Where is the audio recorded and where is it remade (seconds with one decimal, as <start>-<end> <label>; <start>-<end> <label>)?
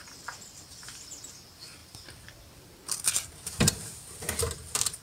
0.0-1.8 recorded; 1.8-5.0 remade